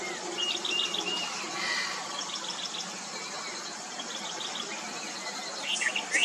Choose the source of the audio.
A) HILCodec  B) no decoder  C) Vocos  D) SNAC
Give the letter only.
B